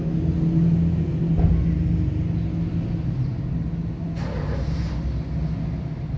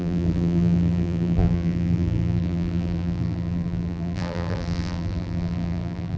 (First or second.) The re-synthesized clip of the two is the second